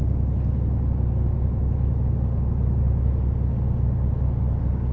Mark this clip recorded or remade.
recorded